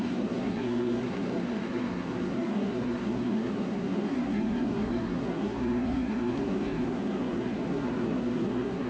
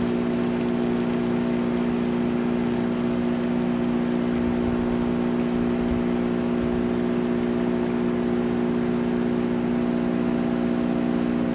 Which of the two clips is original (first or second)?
second